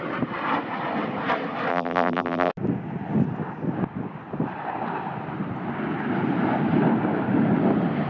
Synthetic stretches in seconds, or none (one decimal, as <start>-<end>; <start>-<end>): 1.7-2.5